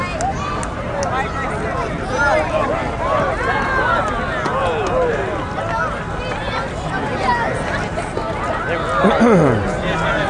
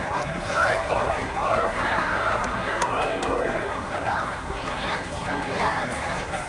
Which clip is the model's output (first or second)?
second